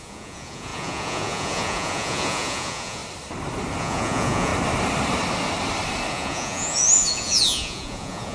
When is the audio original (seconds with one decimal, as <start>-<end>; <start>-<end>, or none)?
3.0-3.8; 4.5-6.1